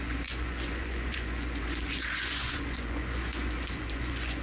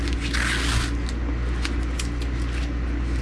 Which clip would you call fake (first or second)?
first